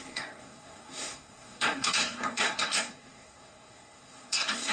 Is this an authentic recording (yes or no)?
no